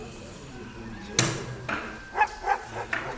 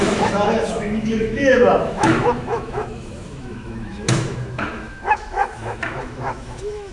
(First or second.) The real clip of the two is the first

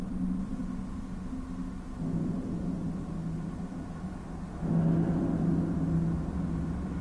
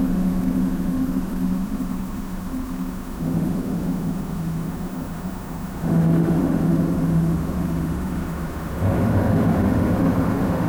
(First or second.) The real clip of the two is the first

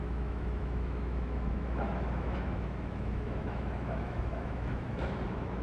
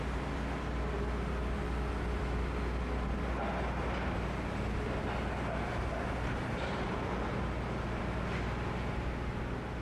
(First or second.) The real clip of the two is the second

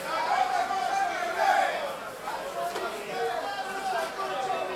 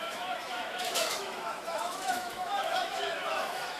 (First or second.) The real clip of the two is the first